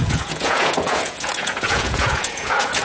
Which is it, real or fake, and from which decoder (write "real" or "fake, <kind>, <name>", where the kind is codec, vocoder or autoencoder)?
fake, vocoder, Vocos